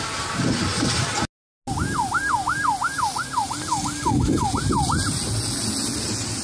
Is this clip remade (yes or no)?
no